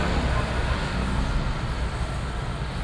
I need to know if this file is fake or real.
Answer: real